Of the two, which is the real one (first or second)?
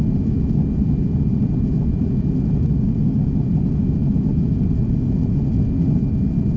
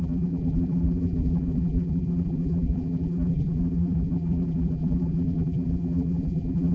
first